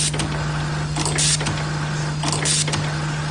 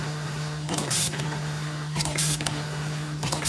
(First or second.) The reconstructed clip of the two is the second